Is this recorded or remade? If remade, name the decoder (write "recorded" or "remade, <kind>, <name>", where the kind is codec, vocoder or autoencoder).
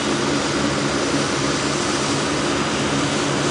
recorded